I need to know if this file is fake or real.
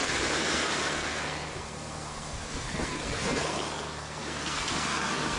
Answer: fake